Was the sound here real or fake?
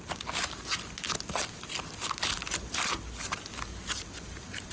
real